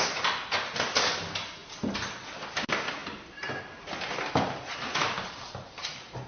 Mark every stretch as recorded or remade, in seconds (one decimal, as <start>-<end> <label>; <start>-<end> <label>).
0.0-6.3 recorded